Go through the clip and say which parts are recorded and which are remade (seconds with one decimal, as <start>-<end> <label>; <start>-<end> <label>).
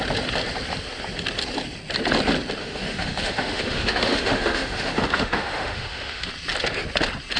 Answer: 0.0-2.6 recorded; 2.6-6.3 remade; 6.3-7.4 recorded